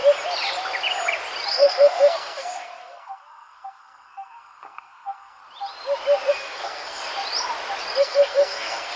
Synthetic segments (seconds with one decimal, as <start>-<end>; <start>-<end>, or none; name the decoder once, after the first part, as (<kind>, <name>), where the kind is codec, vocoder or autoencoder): 1.5-5.4 (codec, SNAC); 6.3-7.0; 8.0-9.0